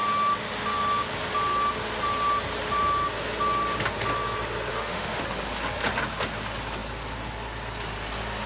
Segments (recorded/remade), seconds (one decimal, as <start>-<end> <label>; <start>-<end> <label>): 0.0-4.7 recorded; 4.7-5.2 remade; 5.2-8.5 recorded